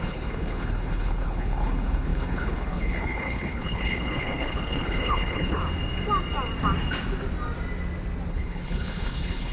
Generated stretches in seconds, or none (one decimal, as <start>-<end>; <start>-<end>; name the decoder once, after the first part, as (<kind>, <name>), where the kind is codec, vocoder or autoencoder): 0.0-5.6 (codec, HILCodec); 8.3-9.5